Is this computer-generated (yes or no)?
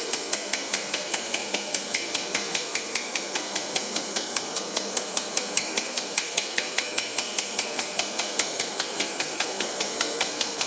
yes